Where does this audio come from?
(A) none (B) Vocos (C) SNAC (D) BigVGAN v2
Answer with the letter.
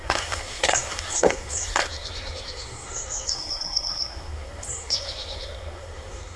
C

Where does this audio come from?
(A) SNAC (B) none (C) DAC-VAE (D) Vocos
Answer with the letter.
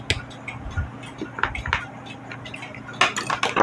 B